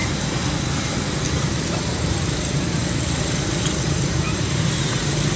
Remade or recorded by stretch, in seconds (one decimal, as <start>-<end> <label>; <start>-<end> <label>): 0.0-1.5 recorded; 1.5-5.4 remade